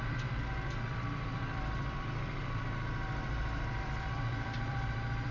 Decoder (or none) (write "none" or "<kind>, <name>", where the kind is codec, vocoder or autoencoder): vocoder, BigVGAN v2